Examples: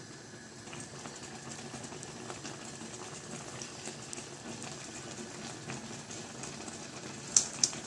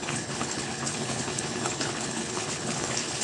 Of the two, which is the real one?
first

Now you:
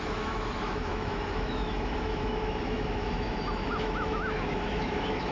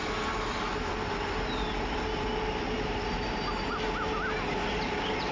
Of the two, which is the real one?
second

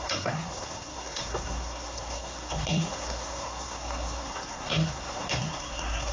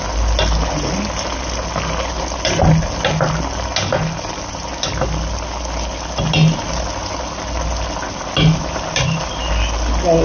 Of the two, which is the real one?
second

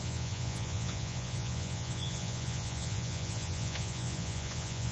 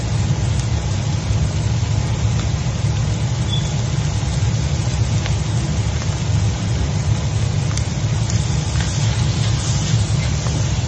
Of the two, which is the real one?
second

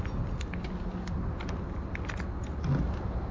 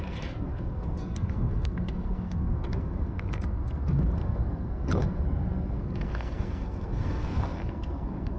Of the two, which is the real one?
first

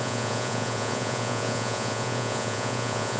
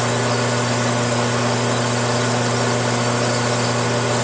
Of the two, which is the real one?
second